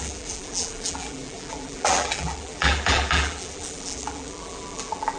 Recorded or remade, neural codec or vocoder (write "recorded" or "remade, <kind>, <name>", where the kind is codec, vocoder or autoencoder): remade, vocoder, BigVGAN v2